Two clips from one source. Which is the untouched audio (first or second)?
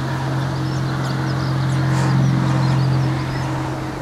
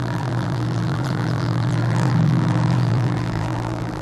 first